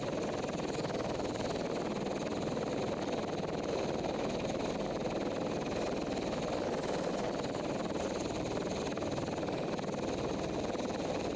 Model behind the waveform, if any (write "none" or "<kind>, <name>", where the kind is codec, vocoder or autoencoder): none